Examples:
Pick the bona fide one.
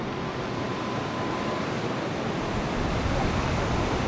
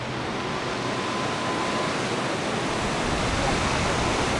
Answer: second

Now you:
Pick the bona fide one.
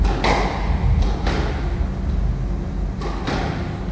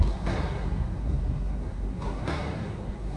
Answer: first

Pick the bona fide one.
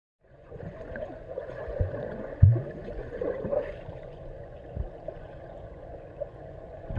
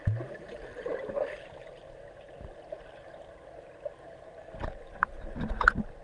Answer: second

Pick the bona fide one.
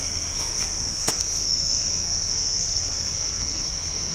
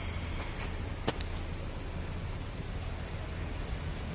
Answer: second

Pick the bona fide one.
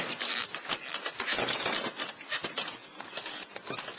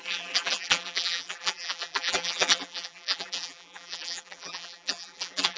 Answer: first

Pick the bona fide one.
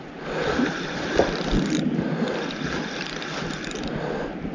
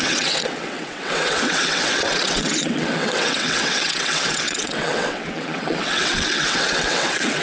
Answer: first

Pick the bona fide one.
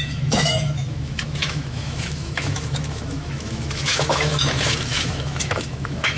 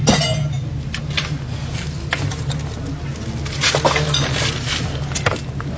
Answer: second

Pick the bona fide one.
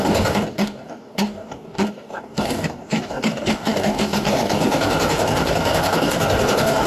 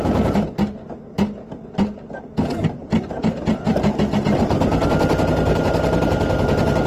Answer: second